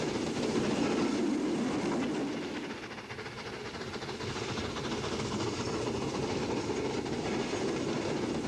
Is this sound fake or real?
real